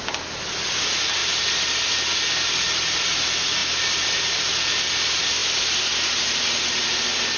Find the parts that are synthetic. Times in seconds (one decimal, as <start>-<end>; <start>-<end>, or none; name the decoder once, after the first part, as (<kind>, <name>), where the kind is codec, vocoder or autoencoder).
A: 1.2-1.9 (vocoder, BigVGAN v2); 3.6-4.3